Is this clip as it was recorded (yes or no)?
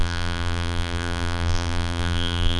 no